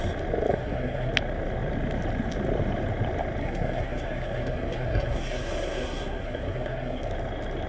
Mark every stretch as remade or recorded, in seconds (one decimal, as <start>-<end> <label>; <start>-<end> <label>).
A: 0.0-0.5 recorded; 0.5-1.1 remade; 1.1-3.4 recorded; 3.4-7.1 remade; 7.1-7.7 recorded